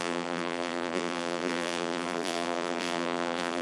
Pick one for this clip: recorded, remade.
remade